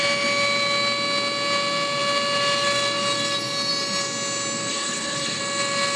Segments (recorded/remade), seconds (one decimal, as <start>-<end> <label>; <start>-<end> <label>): 0.0-4.7 recorded; 4.7-5.4 remade; 5.4-6.0 recorded